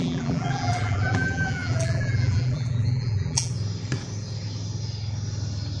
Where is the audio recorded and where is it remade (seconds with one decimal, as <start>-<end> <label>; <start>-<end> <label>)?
0.0-3.5 remade; 3.5-5.8 recorded